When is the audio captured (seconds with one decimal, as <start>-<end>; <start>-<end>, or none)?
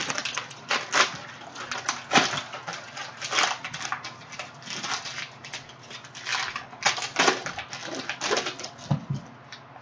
0.0-9.8